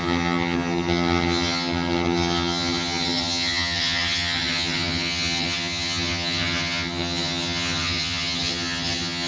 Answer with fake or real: fake